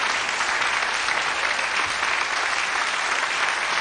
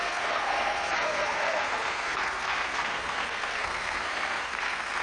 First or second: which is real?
first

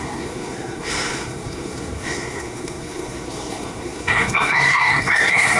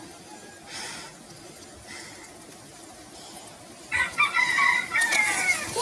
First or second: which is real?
second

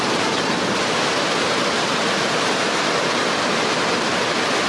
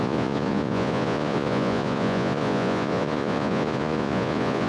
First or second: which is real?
first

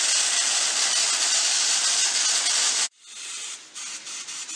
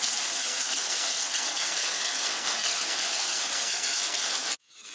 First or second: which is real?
first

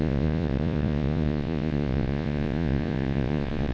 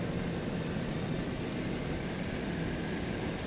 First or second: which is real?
second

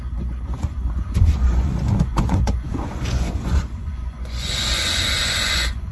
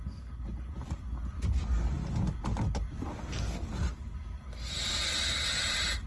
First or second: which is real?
second